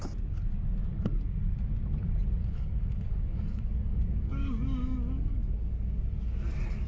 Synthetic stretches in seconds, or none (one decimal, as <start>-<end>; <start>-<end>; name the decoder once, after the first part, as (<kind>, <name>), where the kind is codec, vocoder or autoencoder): 2.4-6.0 (codec, DAC)